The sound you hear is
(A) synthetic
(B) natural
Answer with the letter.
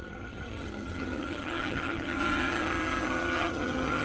A